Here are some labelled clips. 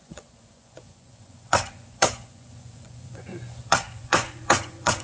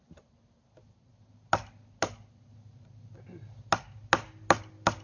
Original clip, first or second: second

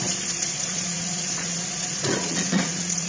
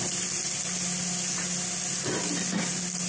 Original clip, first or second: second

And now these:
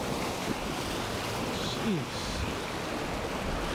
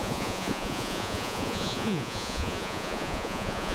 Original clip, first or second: first